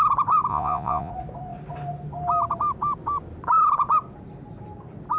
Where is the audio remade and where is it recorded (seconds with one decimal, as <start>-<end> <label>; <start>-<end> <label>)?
0.0-0.5 recorded; 0.5-1.1 remade; 1.1-5.2 recorded